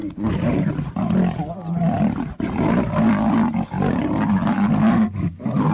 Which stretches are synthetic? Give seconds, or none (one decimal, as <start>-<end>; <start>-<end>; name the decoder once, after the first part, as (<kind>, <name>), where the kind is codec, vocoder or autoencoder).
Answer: 0.0-0.7 (vocoder, BigVGAN v2)